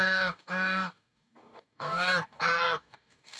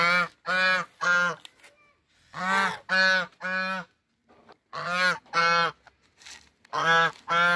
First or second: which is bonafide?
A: second